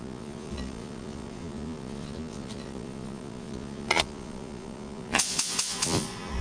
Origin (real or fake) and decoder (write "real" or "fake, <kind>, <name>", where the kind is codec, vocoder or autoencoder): fake, vocoder, Vocos